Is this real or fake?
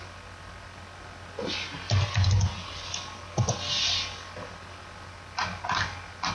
real